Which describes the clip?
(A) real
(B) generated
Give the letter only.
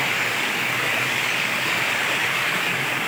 B